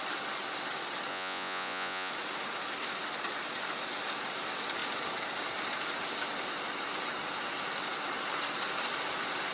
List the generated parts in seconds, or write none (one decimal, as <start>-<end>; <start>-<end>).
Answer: 1.1-2.1